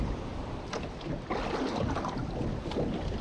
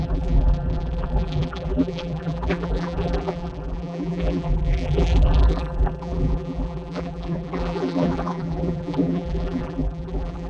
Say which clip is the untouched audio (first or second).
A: first